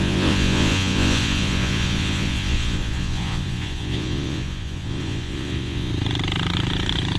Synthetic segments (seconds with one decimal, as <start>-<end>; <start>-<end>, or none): 0.0-5.9